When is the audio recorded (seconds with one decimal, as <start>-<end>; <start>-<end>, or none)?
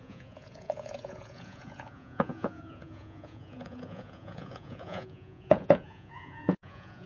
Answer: none